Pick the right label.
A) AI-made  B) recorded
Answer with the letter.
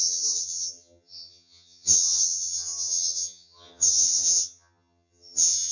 A